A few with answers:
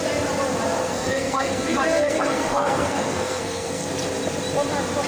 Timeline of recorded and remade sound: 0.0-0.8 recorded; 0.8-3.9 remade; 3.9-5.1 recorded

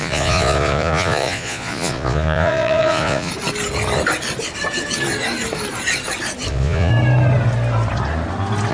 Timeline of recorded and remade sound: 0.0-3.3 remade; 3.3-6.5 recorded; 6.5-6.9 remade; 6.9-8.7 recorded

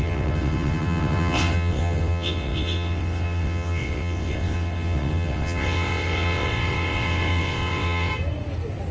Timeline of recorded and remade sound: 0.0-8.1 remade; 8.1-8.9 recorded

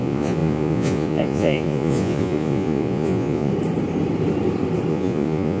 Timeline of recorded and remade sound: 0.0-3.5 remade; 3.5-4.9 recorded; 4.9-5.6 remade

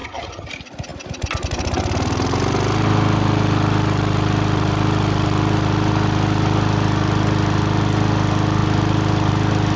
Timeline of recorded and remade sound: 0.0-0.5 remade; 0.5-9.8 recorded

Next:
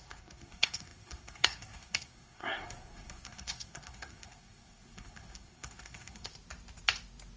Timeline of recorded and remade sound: 0.0-6.3 remade; 6.3-7.4 recorded

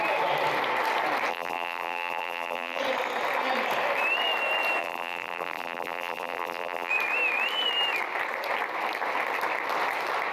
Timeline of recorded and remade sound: 0.0-1.3 recorded; 1.3-2.8 remade; 2.8-4.8 recorded; 4.8-6.9 remade; 6.9-10.3 recorded